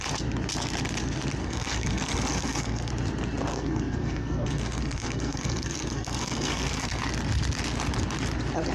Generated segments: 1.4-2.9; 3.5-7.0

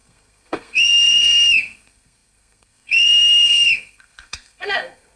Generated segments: 0.0-5.2